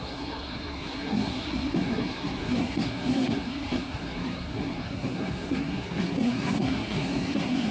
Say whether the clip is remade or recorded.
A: remade